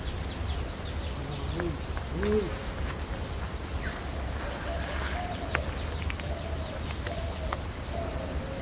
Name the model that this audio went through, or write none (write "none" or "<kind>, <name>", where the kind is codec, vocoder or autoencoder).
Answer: none